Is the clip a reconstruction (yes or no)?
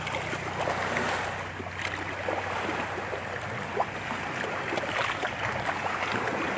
no